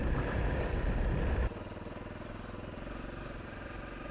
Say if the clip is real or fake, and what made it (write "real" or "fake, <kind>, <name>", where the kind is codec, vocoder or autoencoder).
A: real